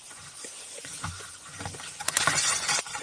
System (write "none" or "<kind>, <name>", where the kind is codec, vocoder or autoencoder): vocoder, Vocos